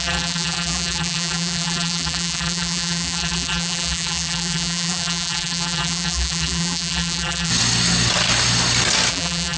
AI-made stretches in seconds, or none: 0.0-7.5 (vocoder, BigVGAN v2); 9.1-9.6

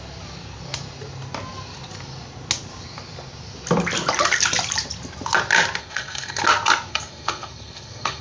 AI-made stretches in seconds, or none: 5.8-6.4 (codec, SNAC); 6.9-8.2

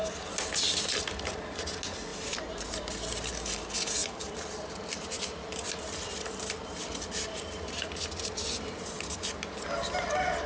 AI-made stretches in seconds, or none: 2.1-3.3 (vocoder, BigVGAN v2); 4.0-8.7

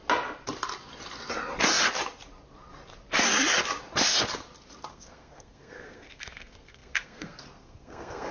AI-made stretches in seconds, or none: 4.9-8.3 (codec, SNAC)

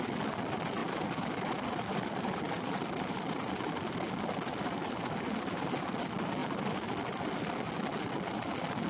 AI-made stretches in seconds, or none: 0.8-4.9 (vocoder, BigVGAN v2); 6.4-8.3

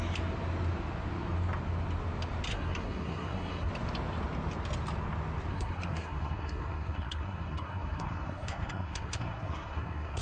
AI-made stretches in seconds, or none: 2.5-3.7 (codec, SNAC); 5.5-10.2

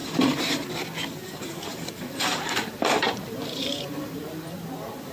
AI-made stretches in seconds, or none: 0.0-0.7 (vocoder, BigVGAN v2); 1.7-4.3